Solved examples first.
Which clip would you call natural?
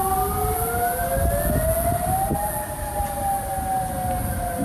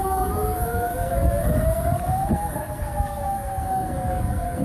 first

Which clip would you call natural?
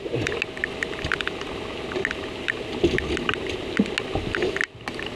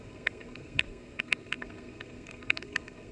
first